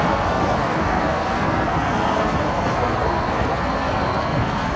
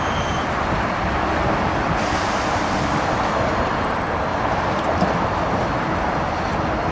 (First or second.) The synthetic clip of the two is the first